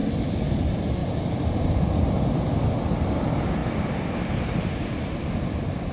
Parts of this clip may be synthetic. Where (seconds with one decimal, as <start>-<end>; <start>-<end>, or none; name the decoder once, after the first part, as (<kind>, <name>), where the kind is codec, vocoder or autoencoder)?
none